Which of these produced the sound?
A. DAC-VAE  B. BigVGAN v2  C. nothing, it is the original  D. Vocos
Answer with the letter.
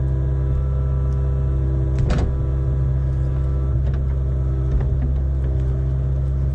C